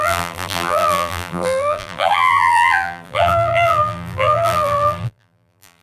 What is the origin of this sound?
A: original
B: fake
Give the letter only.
B